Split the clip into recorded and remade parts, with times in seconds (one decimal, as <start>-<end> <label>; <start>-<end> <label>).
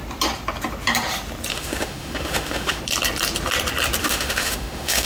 0.0-1.5 recorded; 1.5-2.8 remade; 2.8-4.0 recorded; 4.0-5.1 remade